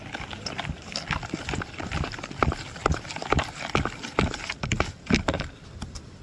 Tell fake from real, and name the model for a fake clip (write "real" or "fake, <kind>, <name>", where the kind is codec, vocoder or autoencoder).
fake, vocoder, BigVGAN v2